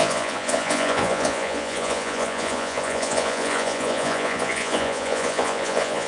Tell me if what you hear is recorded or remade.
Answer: remade